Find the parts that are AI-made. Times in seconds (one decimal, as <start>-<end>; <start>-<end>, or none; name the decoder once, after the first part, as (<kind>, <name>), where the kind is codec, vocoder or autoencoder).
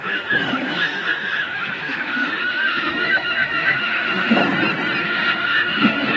0.0-4.4 (autoencoder, DAC-VAE); 5.0-6.2